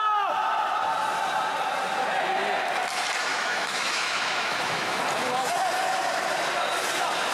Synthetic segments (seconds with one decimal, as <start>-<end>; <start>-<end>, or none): 3.3-5.0